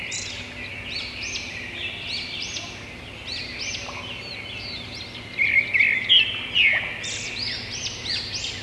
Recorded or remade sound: recorded